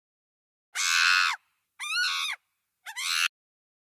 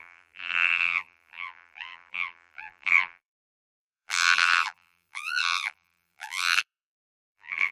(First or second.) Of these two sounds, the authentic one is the first